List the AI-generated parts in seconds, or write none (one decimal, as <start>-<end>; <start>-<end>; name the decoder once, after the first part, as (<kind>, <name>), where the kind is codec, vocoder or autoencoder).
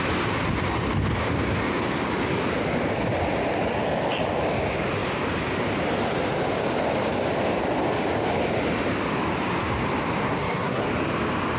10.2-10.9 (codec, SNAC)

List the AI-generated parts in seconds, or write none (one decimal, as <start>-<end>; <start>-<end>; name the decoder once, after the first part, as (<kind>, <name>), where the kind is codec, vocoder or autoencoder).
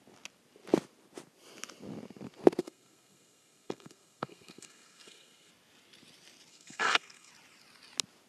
2.6-5.5 (codec, SNAC); 6.5-7.3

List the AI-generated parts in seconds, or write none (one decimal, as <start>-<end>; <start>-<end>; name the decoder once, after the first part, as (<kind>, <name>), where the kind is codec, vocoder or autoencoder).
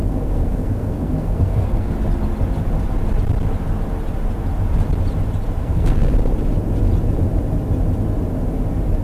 0.0-1.9 (codec, SNAC); 5.6-6.1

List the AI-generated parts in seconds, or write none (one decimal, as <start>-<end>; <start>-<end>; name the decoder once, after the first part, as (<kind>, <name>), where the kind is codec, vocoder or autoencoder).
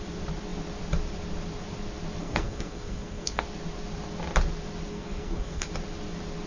2.2-3.4 (codec, SNAC); 4.9-5.7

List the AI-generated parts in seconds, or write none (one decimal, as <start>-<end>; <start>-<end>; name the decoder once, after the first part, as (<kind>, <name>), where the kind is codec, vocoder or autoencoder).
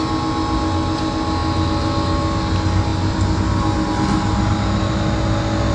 none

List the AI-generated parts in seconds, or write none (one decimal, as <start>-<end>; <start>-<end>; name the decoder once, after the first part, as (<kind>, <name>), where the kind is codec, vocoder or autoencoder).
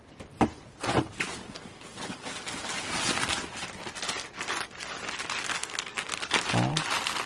5.6-6.1 (codec, SNAC)